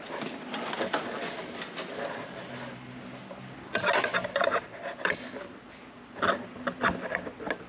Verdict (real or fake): real